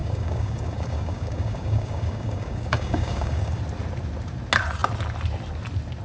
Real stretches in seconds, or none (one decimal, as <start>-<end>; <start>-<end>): 3.6-6.0